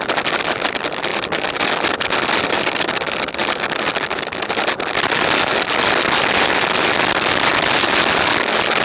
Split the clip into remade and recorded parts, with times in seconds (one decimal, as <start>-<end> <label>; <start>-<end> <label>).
0.0-8.8 recorded